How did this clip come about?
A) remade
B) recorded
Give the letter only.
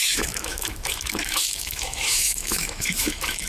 A